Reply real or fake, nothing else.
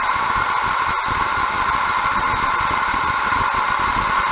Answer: real